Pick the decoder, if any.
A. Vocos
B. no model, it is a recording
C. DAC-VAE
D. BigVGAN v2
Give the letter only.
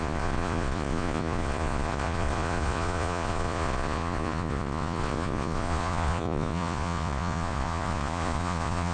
A